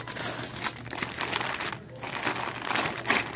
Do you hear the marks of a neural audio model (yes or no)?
no